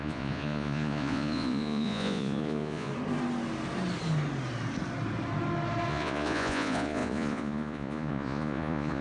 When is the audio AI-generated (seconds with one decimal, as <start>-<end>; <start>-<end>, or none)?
0.0-2.9; 5.9-9.0